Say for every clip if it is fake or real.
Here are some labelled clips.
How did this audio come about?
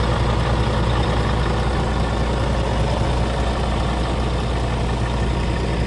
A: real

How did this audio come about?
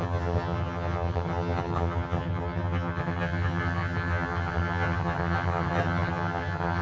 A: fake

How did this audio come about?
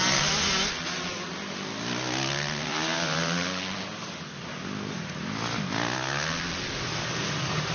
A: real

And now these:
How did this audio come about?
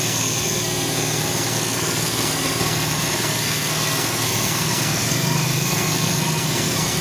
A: fake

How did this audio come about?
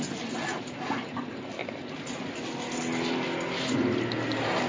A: real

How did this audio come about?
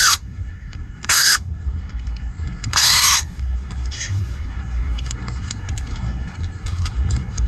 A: fake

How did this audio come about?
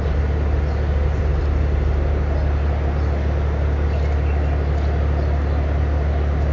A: real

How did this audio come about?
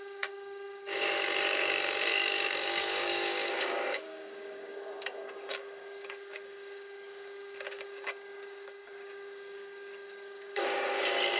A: fake